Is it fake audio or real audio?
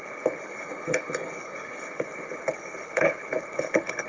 fake